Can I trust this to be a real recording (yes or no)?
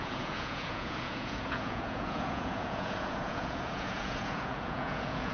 no